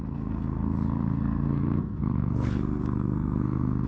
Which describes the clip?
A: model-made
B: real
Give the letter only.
A